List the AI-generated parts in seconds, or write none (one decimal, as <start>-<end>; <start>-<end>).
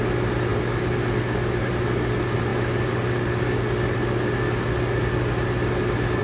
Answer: none